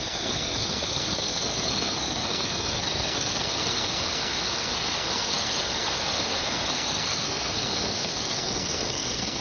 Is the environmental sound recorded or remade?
remade